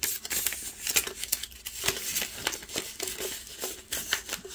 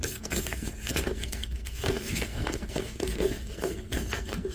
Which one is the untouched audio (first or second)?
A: first